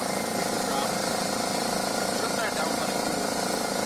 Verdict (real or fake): real